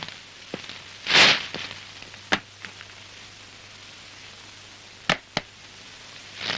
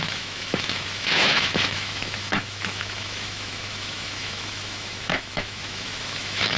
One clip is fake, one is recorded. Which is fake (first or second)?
second